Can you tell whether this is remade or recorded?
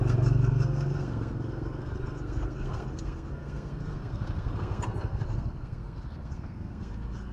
remade